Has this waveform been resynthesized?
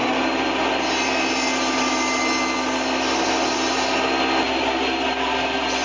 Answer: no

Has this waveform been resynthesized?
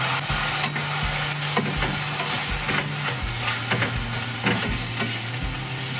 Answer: no